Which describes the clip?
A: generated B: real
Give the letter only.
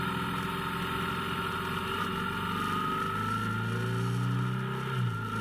B